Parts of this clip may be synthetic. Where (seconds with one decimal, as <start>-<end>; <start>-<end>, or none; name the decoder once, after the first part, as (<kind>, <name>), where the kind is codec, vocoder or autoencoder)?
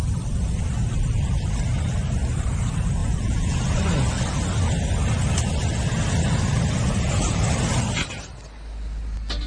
3.0-3.6 (vocoder, Vocos)